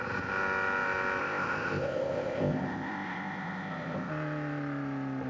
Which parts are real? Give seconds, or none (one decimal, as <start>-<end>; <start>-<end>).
0.0-1.2; 4.1-5.3